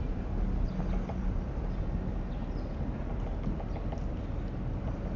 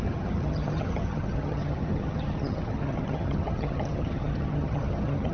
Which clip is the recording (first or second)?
first